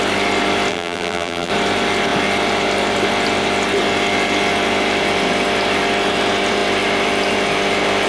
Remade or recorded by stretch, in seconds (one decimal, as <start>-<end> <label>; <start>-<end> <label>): 0.0-0.7 recorded; 0.7-1.5 remade; 1.5-8.1 recorded